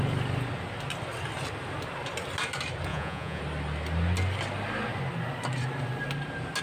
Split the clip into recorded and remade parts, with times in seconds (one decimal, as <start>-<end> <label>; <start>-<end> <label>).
0.0-2.9 recorded; 2.9-3.4 remade; 3.4-6.6 recorded